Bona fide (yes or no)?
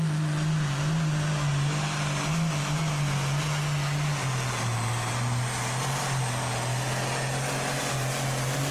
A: yes